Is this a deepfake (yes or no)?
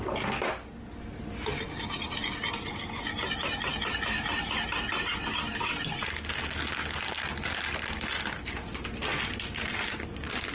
no